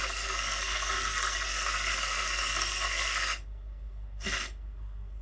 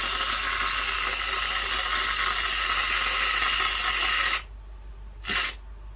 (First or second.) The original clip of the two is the second